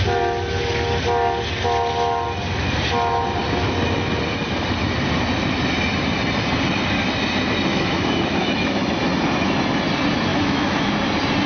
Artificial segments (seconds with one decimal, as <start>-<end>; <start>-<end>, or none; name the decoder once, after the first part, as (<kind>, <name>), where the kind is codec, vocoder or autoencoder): 7.7-8.9 (autoencoder, DAC-VAE); 10.3-10.9